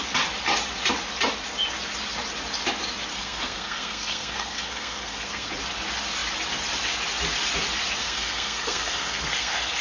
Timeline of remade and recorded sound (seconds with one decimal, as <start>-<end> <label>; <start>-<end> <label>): 0.0-3.1 recorded; 3.1-5.5 remade; 5.5-8.0 recorded; 8.0-9.8 remade